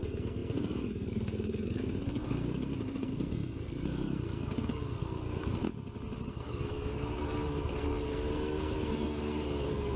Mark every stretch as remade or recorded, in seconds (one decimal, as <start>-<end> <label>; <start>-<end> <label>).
0.0-5.6 remade; 5.6-6.3 recorded; 6.3-10.0 remade